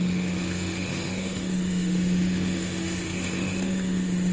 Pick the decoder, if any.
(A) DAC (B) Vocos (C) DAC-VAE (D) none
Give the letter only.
C